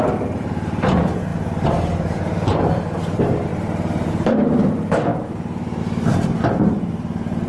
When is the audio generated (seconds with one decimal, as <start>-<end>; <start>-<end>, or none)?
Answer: 0.0-7.5